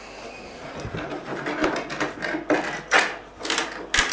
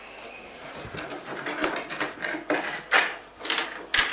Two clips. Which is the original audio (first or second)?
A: first